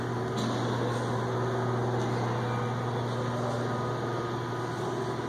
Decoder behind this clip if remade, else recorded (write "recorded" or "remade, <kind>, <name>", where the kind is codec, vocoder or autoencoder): recorded